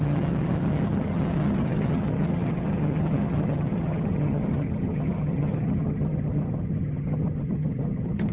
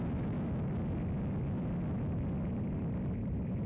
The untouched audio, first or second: second